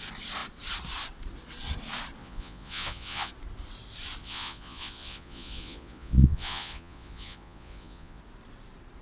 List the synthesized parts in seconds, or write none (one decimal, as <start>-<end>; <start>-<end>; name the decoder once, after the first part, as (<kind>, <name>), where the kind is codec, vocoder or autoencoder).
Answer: 2.2-3.3 (vocoder, Vocos); 4.2-8.2